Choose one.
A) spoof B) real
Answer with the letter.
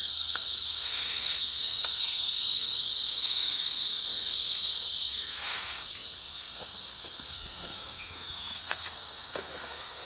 A